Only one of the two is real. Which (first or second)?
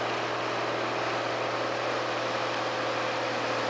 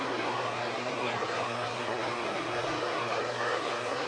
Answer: first